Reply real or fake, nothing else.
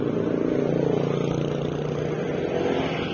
real